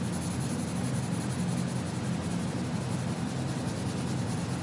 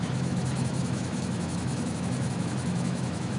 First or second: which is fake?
second